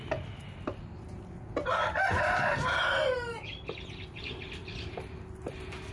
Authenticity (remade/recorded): recorded